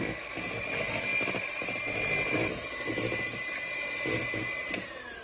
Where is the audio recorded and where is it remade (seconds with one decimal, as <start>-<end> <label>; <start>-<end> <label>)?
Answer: 0.0-5.2 recorded